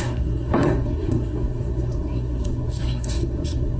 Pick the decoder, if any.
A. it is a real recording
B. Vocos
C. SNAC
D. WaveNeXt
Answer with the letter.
C